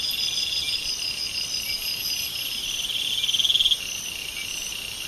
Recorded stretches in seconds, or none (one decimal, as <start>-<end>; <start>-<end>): 0.0-5.1